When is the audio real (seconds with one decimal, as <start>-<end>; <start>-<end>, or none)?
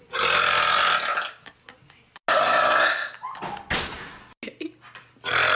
0.0-5.6